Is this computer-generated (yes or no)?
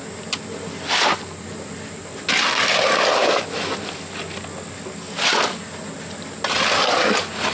no